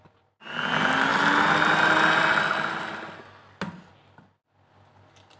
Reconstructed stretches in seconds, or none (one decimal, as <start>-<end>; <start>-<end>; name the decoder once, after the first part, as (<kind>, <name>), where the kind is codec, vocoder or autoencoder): none